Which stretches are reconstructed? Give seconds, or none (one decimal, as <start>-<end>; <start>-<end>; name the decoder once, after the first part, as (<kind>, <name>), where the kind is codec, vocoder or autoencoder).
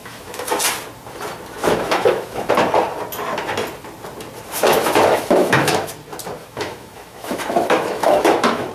0.0-0.5 (autoencoder, DAC-VAE); 1.6-2.5; 4.6-5.9; 6.4-8.7